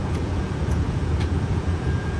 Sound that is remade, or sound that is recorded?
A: remade